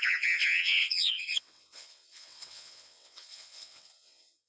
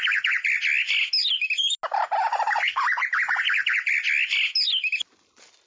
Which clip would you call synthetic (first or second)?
first